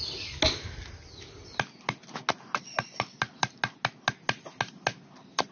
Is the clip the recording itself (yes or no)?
yes